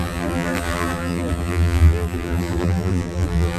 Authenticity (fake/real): fake